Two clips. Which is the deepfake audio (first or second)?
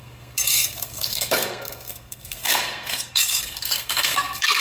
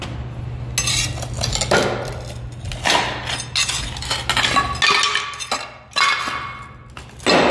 first